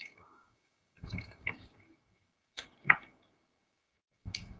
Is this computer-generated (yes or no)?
yes